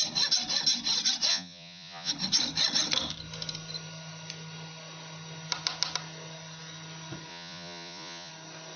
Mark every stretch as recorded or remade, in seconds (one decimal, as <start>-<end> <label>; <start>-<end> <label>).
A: 0.0-1.3 recorded; 1.3-2.1 remade; 2.1-7.3 recorded; 7.3-8.3 remade; 8.3-8.8 recorded